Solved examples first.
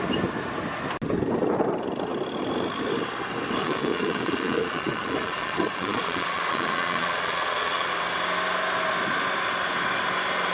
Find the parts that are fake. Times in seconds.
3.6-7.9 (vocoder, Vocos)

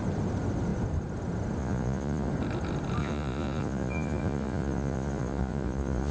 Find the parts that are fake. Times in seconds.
1.6-2.3 (vocoder, Vocos); 3.0-6.1

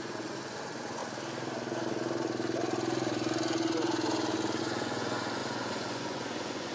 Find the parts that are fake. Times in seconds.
0.0-1.0 (vocoder, Vocos); 4.6-6.7